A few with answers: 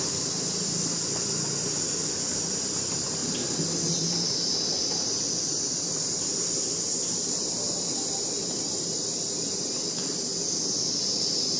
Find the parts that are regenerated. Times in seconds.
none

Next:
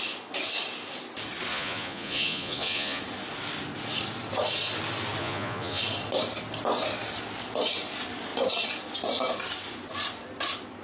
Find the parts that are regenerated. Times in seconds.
1.5-3.0 (vocoder, Vocos); 5.2-5.8

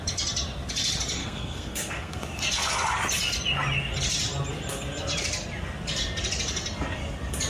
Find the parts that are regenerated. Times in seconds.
1.2-2.2 (codec, SNAC)

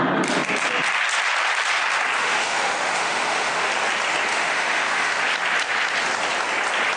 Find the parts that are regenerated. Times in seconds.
2.2-3.7 (autoencoder, DAC-VAE); 4.3-5.2

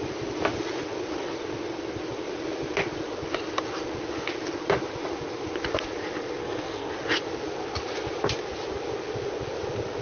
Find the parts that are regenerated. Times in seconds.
6.4-6.9 (codec, SNAC)

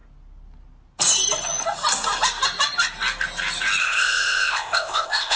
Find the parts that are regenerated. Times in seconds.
3.8-5.4 (codec, ZipCodec)